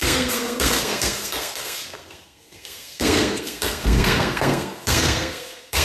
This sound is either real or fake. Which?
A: fake